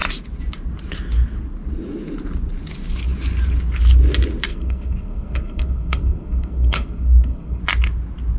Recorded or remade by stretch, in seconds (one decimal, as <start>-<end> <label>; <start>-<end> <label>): 0.0-4.5 recorded; 4.5-7.6 remade; 7.6-8.4 recorded